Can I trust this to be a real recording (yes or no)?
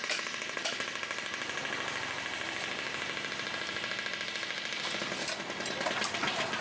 yes